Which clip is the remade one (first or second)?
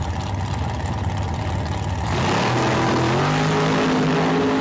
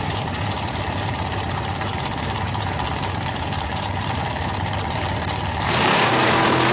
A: second